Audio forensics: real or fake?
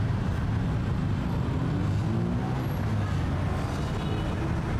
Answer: real